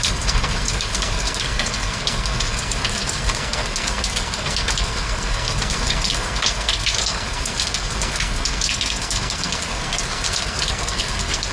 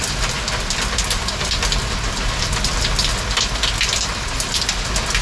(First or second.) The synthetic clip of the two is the first